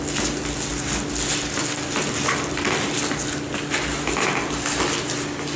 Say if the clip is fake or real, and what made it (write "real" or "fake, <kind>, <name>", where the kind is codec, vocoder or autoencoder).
real